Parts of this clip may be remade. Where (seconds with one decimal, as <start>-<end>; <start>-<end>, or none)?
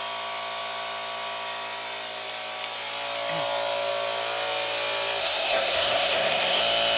5.2-6.6